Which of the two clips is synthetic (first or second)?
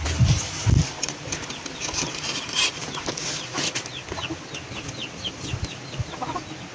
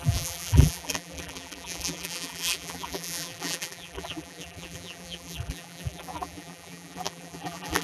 second